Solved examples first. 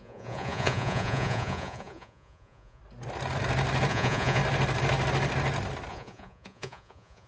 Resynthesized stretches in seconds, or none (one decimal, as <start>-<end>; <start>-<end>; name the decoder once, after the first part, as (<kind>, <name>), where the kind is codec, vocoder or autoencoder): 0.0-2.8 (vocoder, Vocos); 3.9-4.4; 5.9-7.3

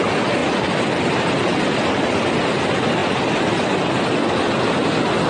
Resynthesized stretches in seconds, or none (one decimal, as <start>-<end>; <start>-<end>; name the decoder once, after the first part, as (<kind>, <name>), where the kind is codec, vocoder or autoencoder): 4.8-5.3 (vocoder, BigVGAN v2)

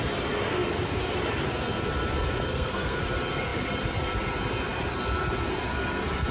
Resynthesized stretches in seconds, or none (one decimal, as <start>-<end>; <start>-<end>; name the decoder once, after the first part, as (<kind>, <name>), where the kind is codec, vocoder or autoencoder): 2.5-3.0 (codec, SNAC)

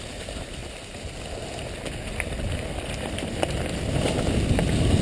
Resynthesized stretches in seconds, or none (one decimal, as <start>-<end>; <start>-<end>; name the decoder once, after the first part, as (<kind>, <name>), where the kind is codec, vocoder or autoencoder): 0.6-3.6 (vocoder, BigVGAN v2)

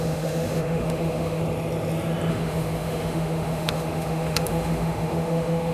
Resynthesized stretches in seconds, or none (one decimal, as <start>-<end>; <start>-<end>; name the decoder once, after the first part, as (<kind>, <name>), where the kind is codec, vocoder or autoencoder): 0.0-1.4 (autoencoder, DAC-VAE); 2.3-5.7

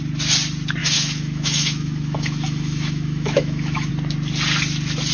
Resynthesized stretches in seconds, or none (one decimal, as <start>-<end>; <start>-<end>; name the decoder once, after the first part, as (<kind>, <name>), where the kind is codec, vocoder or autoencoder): 0.8-3.9 (autoencoder, DAC-VAE)

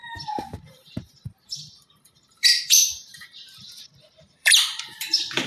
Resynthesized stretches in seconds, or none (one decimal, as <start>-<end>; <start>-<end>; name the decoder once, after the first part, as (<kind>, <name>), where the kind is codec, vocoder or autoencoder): 0.0-5.5 (vocoder, BigVGAN v2)

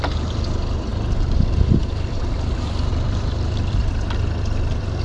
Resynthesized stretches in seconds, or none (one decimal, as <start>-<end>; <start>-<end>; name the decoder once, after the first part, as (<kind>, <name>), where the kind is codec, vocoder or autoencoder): 0.9-2.2 (vocoder, BigVGAN v2); 2.9-3.9